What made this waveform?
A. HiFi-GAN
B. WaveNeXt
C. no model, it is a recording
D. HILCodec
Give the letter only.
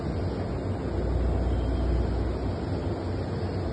C